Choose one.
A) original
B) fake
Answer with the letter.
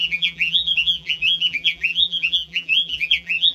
B